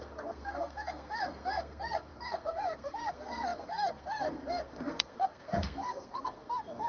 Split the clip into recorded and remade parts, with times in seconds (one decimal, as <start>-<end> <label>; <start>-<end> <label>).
0.0-6.9 remade